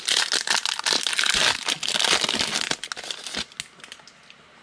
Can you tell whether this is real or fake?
real